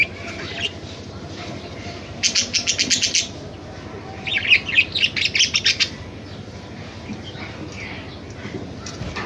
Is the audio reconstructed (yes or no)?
no